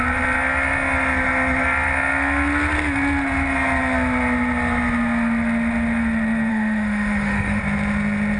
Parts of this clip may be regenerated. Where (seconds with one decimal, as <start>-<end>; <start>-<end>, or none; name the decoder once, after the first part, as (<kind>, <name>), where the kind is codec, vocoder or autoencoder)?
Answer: 6.5-7.6 (autoencoder, DAC-VAE)